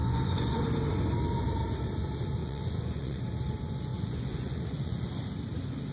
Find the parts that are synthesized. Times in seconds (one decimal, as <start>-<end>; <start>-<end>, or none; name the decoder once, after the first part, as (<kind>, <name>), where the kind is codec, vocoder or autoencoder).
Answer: 0.0-0.6 (vocoder, Vocos); 2.4-3.2; 3.9-5.1